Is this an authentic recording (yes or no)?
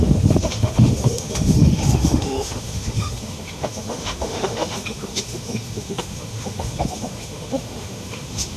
no